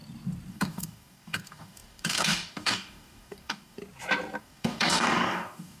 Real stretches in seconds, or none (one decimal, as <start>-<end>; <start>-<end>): 0.0-0.5; 3.8-4.4